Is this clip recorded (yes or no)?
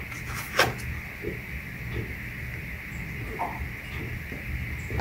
yes